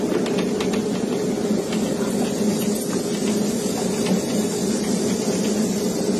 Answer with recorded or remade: recorded